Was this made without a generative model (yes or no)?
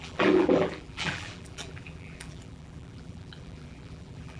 no